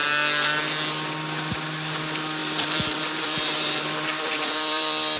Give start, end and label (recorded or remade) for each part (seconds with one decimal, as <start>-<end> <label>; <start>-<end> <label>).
0.0-2.4 recorded; 2.4-5.2 remade